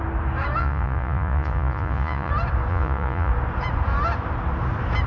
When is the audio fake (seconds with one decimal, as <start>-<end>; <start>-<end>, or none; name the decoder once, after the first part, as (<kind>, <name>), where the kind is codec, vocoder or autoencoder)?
0.6-2.3 (vocoder, Vocos); 2.7-3.3